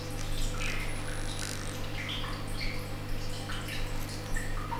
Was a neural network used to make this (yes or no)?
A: no